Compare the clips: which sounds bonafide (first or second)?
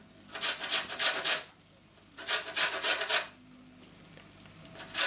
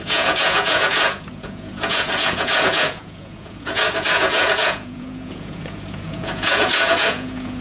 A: first